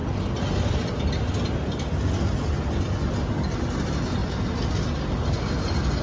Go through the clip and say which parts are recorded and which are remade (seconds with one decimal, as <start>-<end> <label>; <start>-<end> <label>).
0.0-6.0 recorded